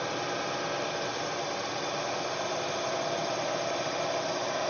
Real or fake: real